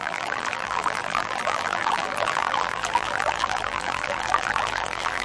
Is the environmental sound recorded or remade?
remade